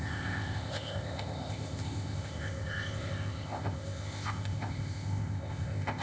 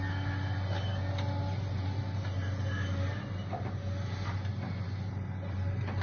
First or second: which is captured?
second